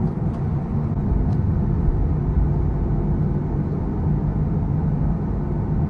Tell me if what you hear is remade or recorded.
recorded